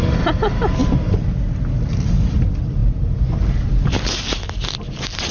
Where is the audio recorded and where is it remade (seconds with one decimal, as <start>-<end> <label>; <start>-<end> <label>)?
0.0-5.3 recorded